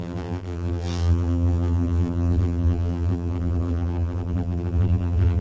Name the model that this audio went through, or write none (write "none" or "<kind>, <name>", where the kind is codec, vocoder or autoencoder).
vocoder, BigVGAN v2